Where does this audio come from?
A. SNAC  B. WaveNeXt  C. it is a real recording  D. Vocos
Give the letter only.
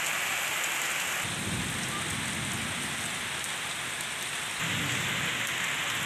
C